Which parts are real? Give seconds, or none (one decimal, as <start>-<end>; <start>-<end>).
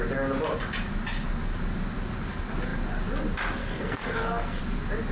0.0-3.6; 4.6-5.1